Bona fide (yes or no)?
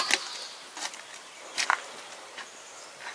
yes